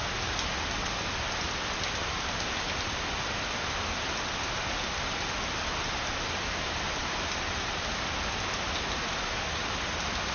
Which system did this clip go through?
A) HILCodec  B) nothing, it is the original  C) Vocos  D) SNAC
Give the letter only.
B